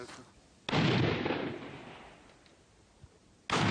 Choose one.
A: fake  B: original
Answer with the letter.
B